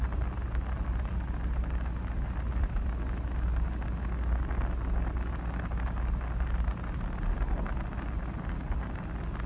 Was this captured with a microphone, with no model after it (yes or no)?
yes